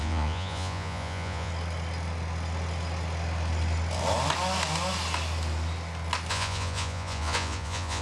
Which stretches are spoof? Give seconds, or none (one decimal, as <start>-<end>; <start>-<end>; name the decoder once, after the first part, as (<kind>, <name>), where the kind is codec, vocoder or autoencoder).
0.0-1.5 (vocoder, Vocos); 6.3-8.0